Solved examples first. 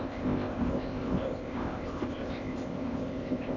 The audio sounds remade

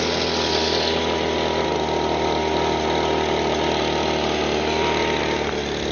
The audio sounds recorded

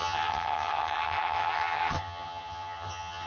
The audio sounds remade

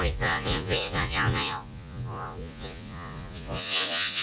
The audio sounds remade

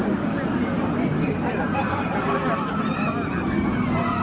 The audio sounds recorded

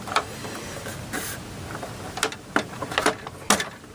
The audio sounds recorded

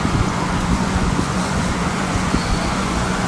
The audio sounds remade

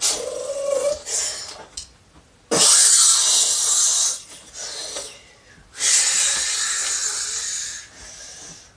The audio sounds recorded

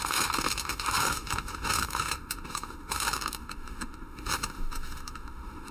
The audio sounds remade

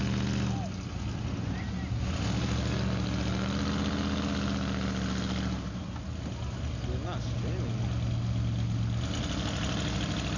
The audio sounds recorded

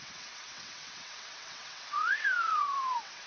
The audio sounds remade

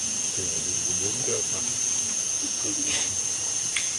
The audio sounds remade